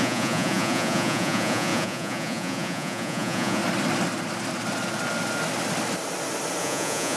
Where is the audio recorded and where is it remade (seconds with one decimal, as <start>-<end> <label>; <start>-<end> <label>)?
0.0-3.6 remade; 3.6-6.6 recorded; 6.6-7.2 remade